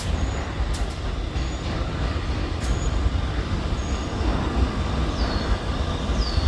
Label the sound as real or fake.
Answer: real